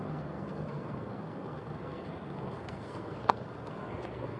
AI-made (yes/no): yes